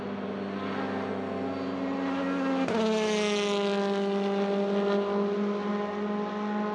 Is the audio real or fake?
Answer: real